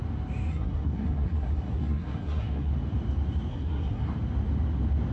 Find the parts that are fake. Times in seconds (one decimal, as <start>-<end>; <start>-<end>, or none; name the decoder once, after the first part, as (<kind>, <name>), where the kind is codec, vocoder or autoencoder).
0.5-2.7 (codec, SNAC); 3.5-4.1